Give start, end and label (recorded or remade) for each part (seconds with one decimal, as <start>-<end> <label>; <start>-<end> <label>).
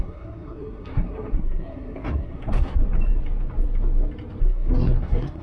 0.0-2.8 remade; 2.8-4.4 recorded; 4.4-5.4 remade